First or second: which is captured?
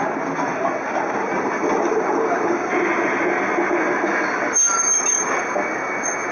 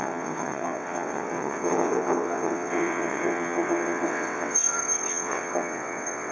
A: first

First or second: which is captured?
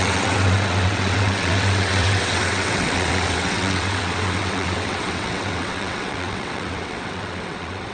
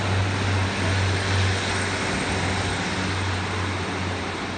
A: second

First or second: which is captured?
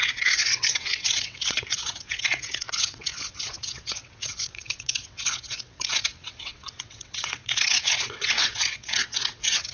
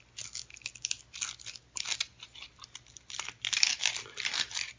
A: second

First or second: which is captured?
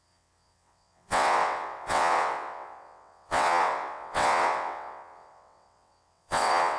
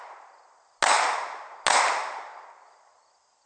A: second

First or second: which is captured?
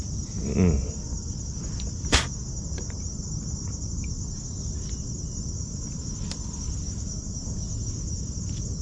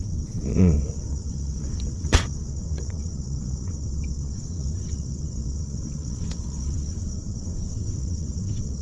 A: first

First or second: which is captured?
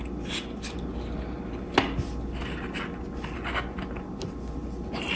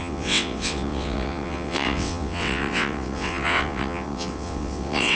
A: first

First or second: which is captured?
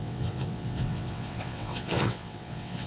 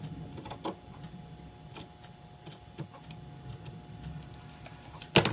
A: second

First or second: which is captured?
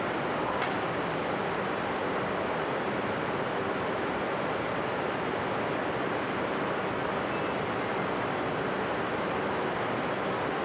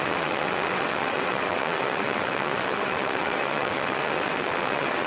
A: first